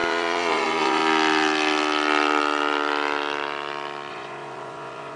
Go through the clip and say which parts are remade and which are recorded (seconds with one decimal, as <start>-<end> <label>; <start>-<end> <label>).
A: 0.0-1.0 remade; 1.0-4.1 recorded; 4.1-5.2 remade